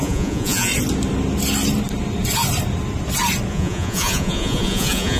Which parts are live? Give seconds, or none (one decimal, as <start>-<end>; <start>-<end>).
0.7-3.5